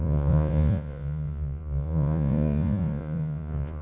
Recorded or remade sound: remade